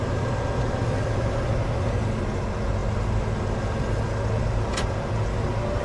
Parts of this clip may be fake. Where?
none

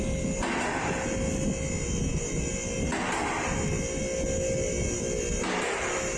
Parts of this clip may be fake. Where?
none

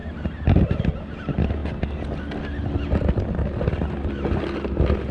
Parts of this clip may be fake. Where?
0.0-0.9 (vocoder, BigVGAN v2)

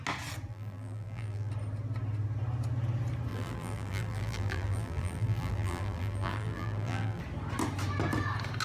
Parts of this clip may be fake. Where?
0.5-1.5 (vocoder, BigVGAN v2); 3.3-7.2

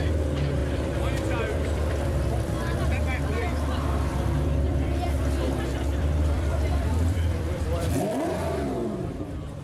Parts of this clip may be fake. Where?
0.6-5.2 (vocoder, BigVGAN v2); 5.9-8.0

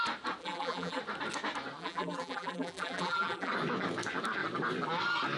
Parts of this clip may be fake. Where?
0.4-1.0 (vocoder, BigVGAN v2); 1.8-3.5

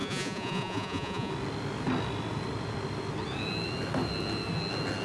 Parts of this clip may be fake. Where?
0.0-1.3 (vocoder, Vocos)

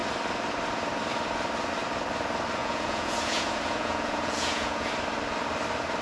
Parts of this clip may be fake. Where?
2.6-4.9 (vocoder, Vocos)